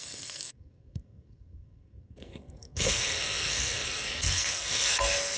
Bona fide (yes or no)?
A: no